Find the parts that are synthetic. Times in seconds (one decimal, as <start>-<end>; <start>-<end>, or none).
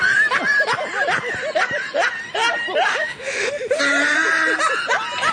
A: 2.9-3.8